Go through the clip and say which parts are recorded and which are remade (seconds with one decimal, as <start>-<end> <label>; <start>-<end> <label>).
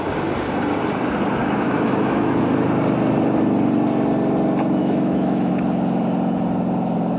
0.0-1.4 recorded; 1.4-2.4 remade; 2.4-4.8 recorded; 4.8-5.5 remade; 5.5-7.2 recorded